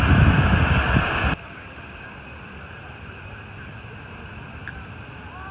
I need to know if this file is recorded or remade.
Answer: recorded